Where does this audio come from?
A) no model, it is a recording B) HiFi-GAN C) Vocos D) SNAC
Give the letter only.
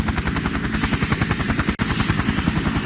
A